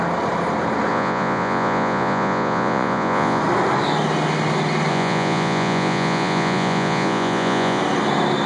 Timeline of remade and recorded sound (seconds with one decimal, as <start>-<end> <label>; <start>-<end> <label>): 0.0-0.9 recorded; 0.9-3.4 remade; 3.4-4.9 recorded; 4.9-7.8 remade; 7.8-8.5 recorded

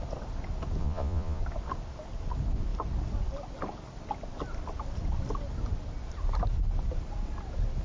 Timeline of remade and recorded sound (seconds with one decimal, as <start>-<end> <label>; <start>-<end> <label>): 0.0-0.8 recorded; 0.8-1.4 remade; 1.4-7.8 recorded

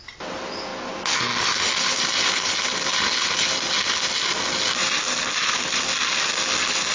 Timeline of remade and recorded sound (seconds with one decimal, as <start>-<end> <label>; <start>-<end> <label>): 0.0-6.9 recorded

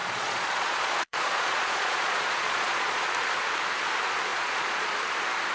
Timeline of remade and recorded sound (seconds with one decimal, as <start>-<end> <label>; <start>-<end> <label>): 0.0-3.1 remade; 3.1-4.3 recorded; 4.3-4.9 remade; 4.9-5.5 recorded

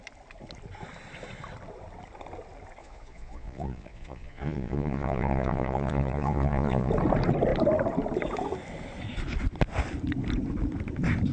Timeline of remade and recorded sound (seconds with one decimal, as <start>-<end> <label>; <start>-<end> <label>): 0.0-2.8 recorded; 2.8-6.9 remade; 6.9-11.3 recorded